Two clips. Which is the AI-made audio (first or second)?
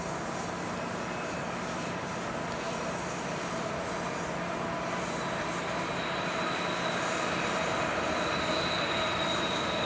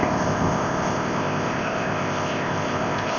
second